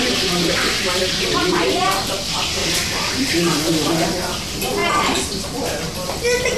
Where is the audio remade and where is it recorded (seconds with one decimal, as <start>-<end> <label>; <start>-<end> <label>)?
0.0-2.6 recorded; 2.6-3.9 remade; 3.9-6.6 recorded